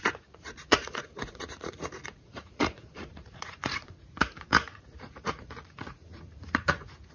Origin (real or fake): fake